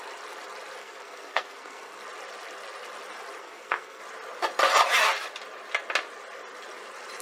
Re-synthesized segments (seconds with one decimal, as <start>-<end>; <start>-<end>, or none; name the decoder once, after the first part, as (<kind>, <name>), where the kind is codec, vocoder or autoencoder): 0.8-2.0 (codec, SNAC); 3.4-4.0